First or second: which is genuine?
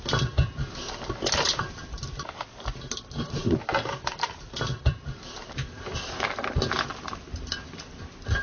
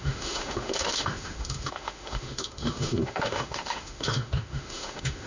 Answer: first